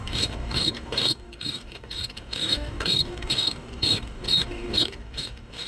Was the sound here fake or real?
fake